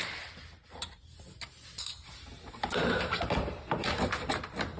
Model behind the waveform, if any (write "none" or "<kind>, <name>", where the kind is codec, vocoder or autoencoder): none